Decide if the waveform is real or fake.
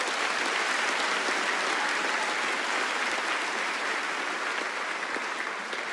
real